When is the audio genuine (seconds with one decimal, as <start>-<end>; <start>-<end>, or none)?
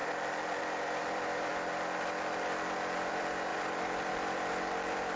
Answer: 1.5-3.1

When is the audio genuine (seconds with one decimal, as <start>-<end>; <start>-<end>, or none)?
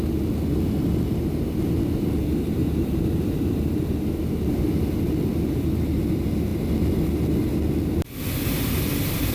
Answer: 0.0-2.2; 3.9-9.3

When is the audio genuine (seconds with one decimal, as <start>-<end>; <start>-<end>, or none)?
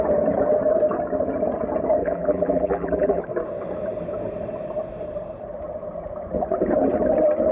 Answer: 0.0-2.0; 3.2-7.5